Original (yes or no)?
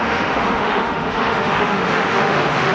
no